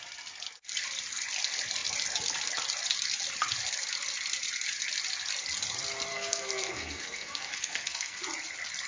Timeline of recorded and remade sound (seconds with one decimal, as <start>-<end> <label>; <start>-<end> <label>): 0.0-6.1 recorded; 6.1-8.2 remade; 8.2-8.9 recorded